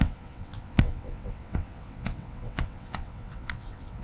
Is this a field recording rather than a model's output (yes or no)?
no